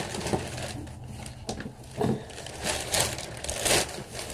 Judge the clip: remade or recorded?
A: recorded